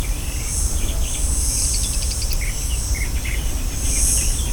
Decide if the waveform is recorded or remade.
remade